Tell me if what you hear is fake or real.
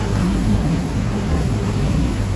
fake